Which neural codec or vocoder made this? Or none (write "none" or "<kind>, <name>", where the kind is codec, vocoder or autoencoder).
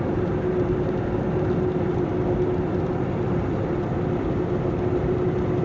none